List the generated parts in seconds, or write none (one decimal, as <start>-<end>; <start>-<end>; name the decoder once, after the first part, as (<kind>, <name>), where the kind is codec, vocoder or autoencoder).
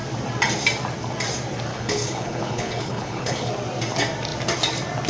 1.7-3.5 (codec, HILCodec)